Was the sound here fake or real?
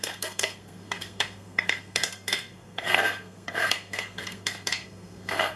fake